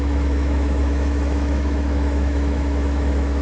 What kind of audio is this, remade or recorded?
remade